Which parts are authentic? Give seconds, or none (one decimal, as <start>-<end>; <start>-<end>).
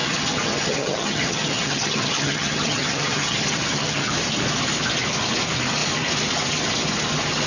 4.1-7.5